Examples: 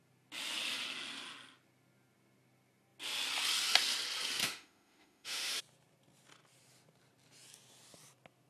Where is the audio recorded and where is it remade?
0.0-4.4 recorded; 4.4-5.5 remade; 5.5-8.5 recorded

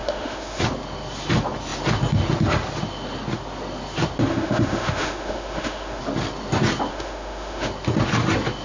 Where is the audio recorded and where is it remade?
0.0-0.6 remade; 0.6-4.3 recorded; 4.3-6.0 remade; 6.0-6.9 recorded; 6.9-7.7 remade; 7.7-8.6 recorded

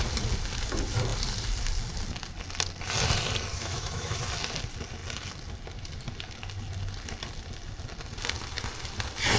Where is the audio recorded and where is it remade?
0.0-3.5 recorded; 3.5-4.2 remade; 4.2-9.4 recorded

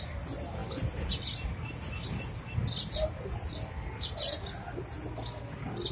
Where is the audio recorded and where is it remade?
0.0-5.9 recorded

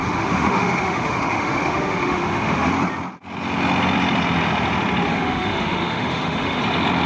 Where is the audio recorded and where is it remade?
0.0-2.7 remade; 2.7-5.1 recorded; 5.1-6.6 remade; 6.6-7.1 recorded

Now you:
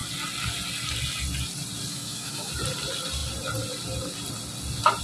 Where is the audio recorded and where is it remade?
0.0-1.9 recorded; 1.9-2.5 remade; 2.5-5.0 recorded

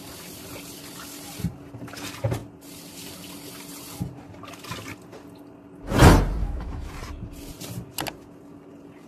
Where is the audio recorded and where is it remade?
0.0-6.4 recorded; 6.4-6.9 remade; 6.9-9.1 recorded

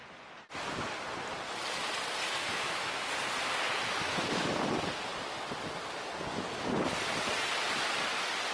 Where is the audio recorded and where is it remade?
0.0-2.4 recorded; 2.4-3.1 remade; 3.1-3.8 recorded; 3.8-4.5 remade; 4.5-8.5 recorded